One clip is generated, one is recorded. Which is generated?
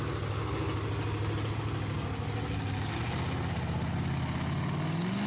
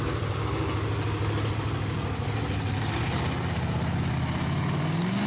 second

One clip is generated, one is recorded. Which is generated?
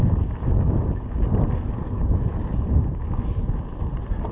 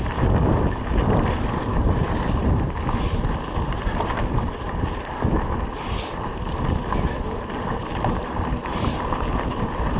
second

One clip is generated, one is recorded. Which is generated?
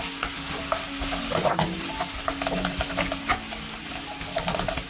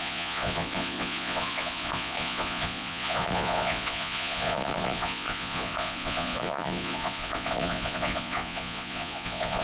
second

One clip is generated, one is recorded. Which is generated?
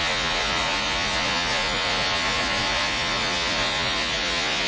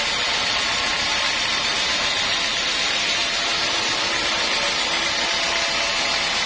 first